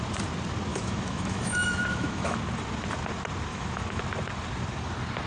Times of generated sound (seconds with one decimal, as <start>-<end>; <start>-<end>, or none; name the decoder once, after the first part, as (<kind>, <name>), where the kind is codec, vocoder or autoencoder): 0.7-2.4 (autoencoder, DAC-VAE); 3.5-4.0